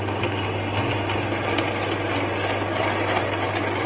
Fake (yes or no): no